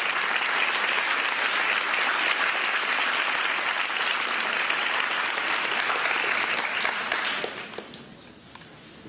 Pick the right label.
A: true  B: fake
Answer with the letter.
A